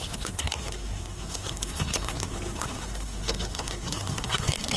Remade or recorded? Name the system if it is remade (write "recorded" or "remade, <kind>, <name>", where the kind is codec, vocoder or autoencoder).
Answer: remade, codec, SNAC